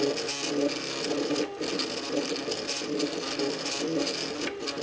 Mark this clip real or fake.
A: real